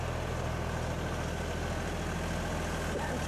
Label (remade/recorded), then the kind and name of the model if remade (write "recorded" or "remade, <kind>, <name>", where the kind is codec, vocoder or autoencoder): recorded